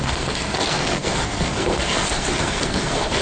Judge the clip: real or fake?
fake